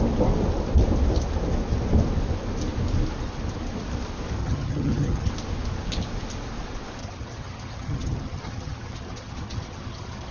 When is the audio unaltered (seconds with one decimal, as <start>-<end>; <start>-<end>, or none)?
0.0-4.4; 5.3-7.0